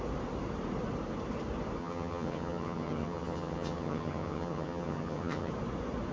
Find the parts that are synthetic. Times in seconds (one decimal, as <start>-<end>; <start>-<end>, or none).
1.8-5.5